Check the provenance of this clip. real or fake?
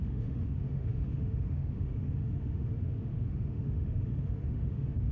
fake